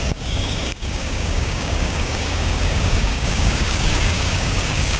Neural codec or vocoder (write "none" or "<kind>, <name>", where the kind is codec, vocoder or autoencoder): codec, DAC